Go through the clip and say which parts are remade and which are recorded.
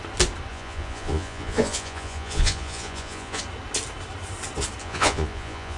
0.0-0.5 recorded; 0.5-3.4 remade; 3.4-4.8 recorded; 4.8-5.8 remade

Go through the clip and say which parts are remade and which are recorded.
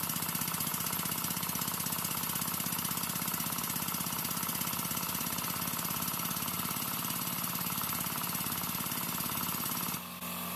0.0-10.6 recorded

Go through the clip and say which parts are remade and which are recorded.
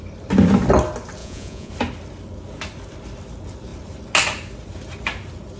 0.0-1.2 recorded; 1.2-1.7 remade; 1.7-5.6 recorded